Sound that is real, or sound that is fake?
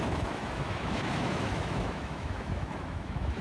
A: fake